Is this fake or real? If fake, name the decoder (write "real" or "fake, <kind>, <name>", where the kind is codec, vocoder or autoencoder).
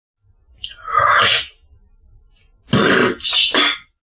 real